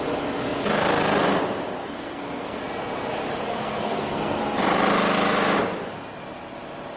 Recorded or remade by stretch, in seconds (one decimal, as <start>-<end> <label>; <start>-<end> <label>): 0.0-1.8 recorded; 1.8-2.6 remade; 2.6-3.5 recorded; 3.5-4.4 remade; 4.4-7.0 recorded